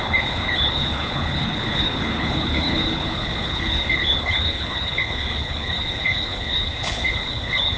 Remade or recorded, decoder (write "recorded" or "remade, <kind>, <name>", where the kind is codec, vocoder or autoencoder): remade, codec, HILCodec